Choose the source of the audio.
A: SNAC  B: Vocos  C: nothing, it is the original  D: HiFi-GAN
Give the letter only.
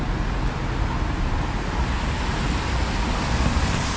C